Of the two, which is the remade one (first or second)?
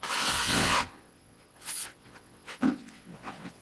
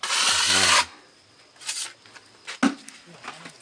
first